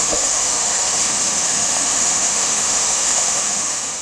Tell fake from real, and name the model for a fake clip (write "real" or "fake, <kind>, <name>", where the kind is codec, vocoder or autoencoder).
fake, autoencoder, DAC-VAE